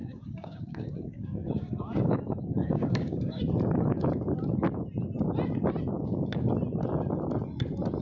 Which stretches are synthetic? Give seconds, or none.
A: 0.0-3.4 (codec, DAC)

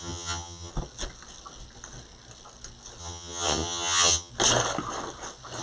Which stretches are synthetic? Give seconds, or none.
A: 0.0-0.7 (vocoder, HiFi-GAN); 3.0-4.3

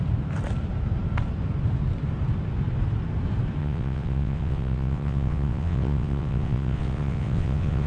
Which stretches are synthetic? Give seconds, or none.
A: 3.6-7.9 (vocoder, WaveNeXt)

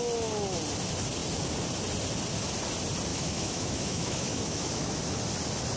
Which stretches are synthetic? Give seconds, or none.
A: 3.1-5.0 (autoencoder, DAC-VAE)